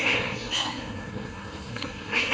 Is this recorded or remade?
remade